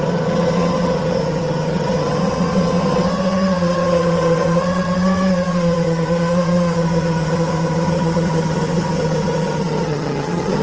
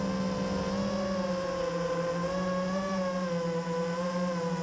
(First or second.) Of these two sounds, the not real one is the first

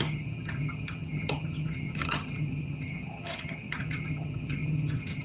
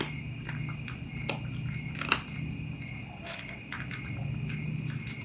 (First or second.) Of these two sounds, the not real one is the first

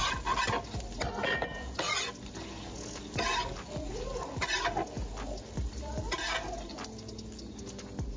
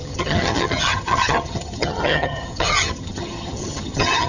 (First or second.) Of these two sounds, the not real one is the second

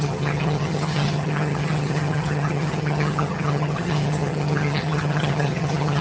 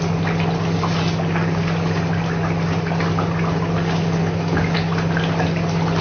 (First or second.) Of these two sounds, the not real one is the first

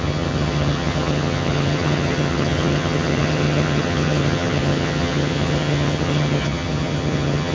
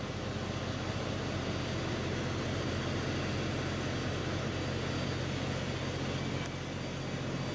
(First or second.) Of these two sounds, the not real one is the first